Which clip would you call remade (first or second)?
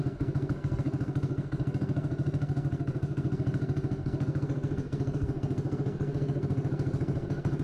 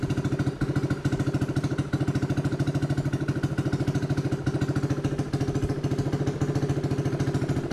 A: first